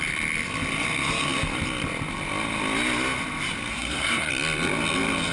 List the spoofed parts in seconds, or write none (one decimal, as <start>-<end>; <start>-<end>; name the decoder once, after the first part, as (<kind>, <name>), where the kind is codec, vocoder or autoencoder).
3.7-4.3 (codec, SNAC)